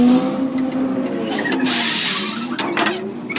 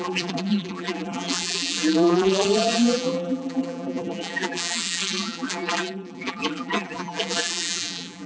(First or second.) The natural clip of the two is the first